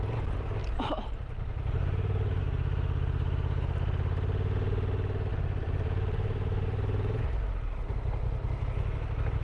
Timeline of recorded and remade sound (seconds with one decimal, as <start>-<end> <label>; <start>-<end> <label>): 0.0-0.6 recorded; 0.6-2.4 remade; 2.4-5.3 recorded; 5.3-7.4 remade; 7.4-9.4 recorded